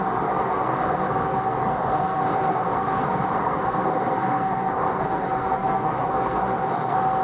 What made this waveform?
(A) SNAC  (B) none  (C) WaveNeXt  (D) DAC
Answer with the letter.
A